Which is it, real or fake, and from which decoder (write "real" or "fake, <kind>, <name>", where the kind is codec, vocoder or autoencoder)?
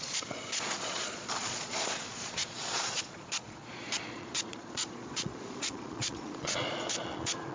fake, vocoder, Vocos